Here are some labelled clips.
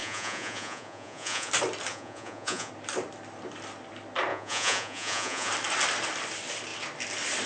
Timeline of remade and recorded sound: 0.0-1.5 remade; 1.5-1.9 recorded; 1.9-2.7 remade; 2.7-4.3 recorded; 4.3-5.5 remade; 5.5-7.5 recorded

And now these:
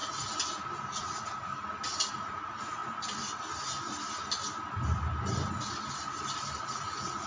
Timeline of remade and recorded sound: 0.0-1.0 recorded; 1.0-1.5 remade; 1.5-2.1 recorded; 2.1-2.8 remade; 2.8-6.6 recorded; 6.6-7.3 remade